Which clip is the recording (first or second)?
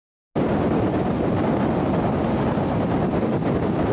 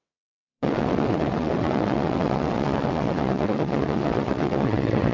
first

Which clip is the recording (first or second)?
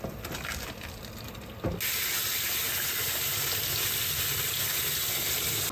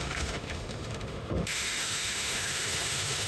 first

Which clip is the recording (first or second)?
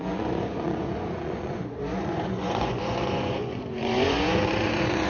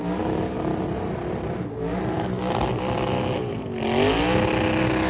second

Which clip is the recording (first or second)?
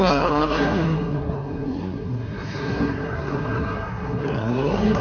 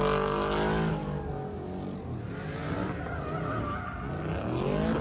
second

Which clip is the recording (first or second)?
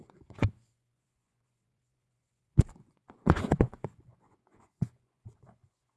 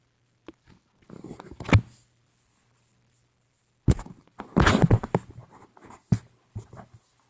second